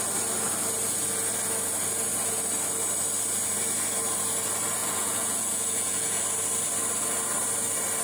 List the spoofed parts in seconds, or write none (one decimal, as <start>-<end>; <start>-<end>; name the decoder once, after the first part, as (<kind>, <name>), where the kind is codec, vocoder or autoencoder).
4.8-6.2 (vocoder, Vocos)